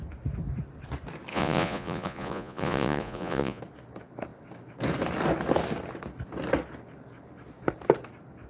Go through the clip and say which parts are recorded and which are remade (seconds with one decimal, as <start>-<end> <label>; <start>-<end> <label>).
0.0-1.3 recorded; 1.3-3.6 remade; 3.6-8.5 recorded